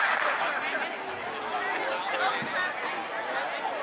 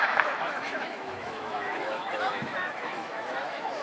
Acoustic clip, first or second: first